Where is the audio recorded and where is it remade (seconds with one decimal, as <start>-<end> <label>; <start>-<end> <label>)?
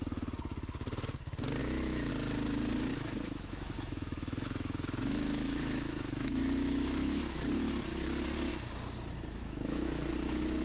0.0-1.6 recorded; 1.6-2.1 remade; 2.1-2.9 recorded; 2.9-7.4 remade; 7.4-9.4 recorded; 9.4-10.1 remade; 10.1-10.6 recorded